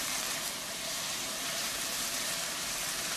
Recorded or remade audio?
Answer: remade